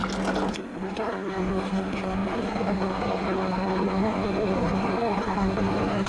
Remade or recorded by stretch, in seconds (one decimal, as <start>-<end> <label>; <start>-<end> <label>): 0.0-0.5 recorded; 0.5-6.1 remade